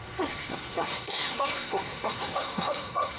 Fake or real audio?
fake